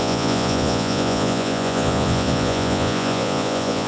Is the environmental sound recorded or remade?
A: remade